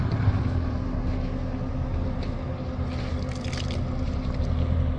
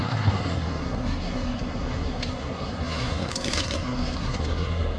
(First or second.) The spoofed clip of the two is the second